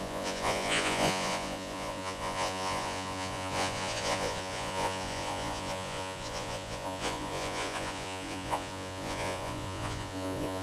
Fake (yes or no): yes